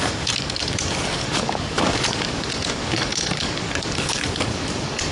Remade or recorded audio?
remade